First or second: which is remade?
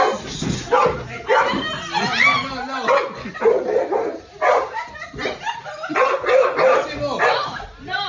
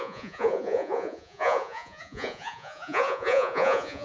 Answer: second